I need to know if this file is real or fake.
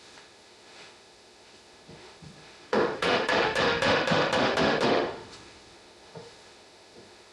fake